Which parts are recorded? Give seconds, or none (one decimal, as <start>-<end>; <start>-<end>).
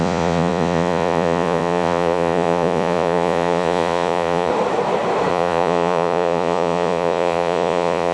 4.5-5.3